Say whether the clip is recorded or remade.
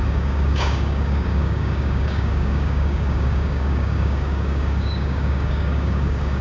remade